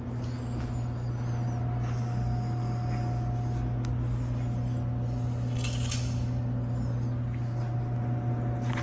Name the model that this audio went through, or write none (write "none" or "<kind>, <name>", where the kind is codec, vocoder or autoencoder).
none